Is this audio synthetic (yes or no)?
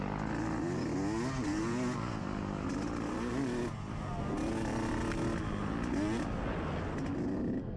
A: no